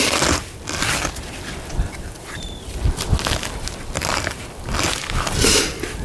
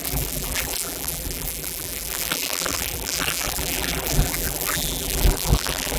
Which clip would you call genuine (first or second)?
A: first